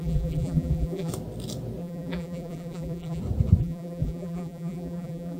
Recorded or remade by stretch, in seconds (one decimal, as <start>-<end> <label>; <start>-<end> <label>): 0.0-1.1 remade; 1.1-1.8 recorded; 1.8-3.2 remade; 3.2-3.6 recorded; 3.6-5.4 remade